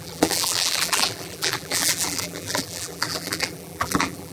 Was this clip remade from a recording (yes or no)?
yes